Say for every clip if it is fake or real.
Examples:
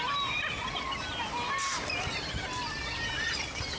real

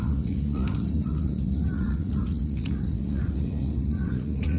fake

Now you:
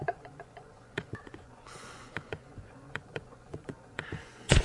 fake